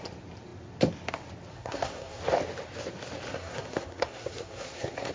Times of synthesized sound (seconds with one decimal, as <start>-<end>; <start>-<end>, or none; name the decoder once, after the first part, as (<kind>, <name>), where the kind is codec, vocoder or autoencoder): 1.5-2.2 (codec, SNAC); 3.3-5.1